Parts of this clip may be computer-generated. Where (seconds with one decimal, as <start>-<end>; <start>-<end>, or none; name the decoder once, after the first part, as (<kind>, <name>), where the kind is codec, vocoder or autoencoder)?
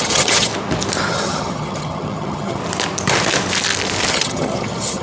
0.0-0.5 (vocoder, HiFi-GAN); 1.1-2.6; 4.1-5.0